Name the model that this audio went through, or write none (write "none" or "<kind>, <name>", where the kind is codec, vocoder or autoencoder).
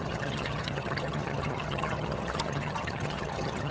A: vocoder, HiFi-GAN